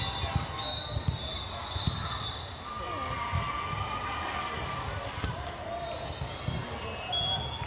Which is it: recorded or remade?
recorded